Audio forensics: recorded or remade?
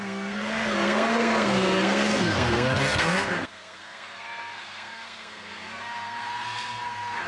remade